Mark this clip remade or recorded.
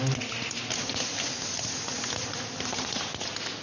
recorded